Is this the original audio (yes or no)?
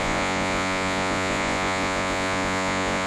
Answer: no